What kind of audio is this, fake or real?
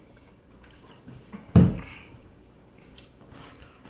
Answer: fake